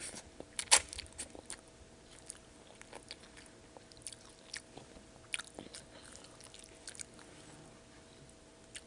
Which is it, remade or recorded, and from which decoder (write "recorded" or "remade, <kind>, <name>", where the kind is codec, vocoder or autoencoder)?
recorded